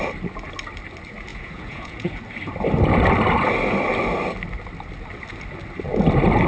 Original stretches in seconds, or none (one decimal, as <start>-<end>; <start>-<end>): 0.0-1.3; 2.2-6.5